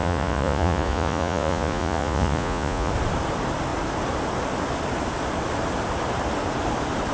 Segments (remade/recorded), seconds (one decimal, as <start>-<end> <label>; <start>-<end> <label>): 0.0-2.9 remade; 2.9-7.1 recorded